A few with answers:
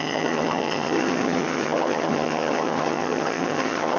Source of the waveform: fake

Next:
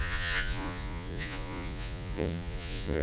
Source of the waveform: fake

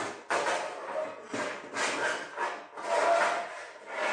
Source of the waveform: real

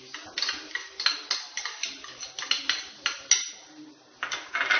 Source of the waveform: real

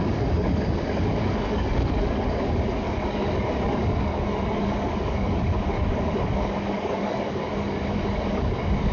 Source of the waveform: fake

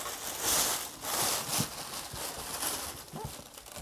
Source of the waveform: real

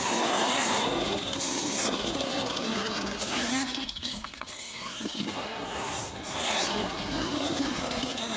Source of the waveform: fake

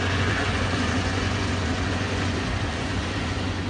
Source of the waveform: fake